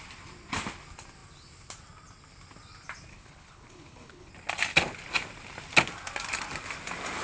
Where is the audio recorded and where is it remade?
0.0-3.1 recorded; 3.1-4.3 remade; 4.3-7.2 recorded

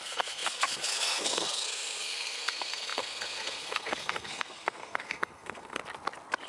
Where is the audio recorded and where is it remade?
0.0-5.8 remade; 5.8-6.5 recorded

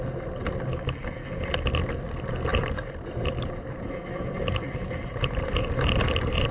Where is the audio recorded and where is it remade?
0.0-2.5 recorded; 2.5-6.5 remade